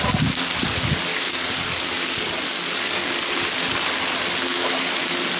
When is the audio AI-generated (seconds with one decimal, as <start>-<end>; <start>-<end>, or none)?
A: 1.1-3.2; 4.5-5.0